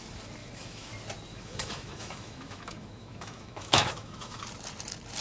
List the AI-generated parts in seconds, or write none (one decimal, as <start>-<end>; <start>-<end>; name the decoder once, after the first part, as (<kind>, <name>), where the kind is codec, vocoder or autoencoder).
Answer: 0.4-0.9 (autoencoder, DAC-VAE); 1.3-4.4